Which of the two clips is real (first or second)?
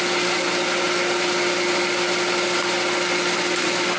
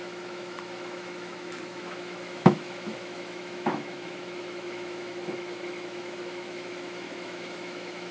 first